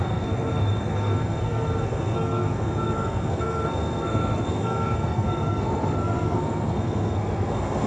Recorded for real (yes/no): no